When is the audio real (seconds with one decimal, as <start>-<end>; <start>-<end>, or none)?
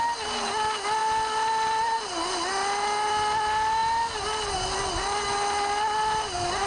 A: 0.0-6.7